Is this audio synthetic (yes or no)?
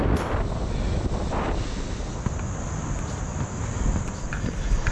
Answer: no